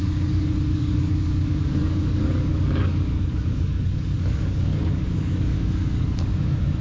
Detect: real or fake fake